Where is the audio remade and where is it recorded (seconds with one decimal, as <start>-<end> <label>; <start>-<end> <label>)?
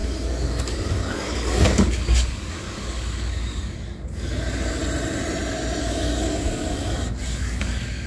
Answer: 0.0-4.8 remade; 4.8-5.8 recorded; 5.8-8.1 remade